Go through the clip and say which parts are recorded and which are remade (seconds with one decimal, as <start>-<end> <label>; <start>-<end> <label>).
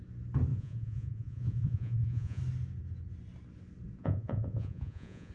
0.0-0.5 recorded; 0.5-2.4 remade; 2.4-4.0 recorded; 4.0-5.3 remade